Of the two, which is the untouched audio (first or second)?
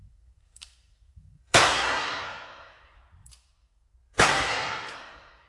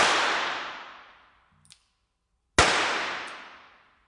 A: second